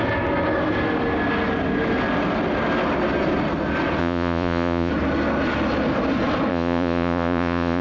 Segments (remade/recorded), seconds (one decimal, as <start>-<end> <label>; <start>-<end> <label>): 0.0-4.0 recorded; 4.0-4.9 remade; 4.9-6.5 recorded; 6.5-7.8 remade